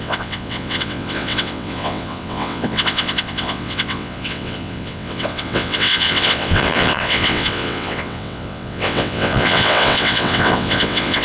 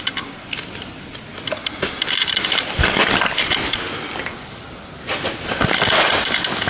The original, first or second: second